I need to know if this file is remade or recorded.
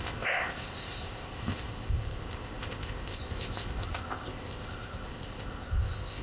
remade